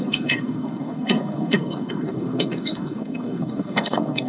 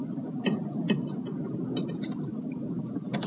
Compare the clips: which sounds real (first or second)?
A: second